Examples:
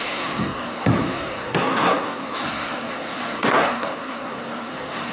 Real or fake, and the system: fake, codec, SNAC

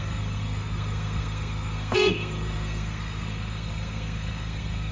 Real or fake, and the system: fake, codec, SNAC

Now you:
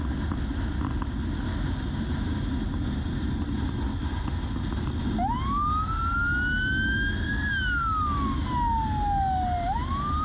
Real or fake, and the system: real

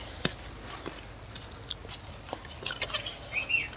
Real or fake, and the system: real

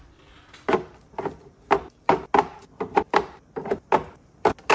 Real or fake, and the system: real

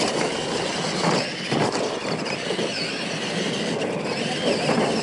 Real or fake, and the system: real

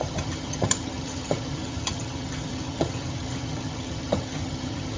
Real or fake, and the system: fake, vocoder, HiFi-GAN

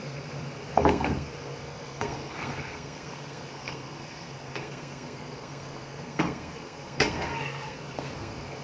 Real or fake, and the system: fake, codec, SNAC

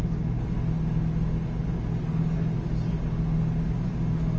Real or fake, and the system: real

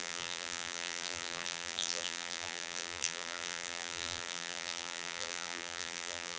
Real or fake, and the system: fake, vocoder, BigVGAN v2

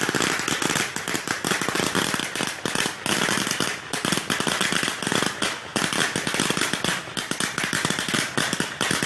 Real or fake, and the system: real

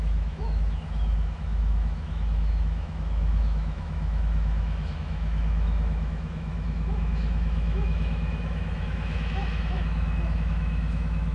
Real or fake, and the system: fake, autoencoder, DAC-VAE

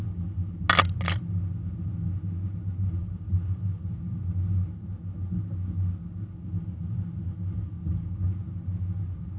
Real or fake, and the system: real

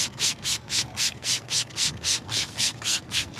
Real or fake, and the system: fake, codec, SNAC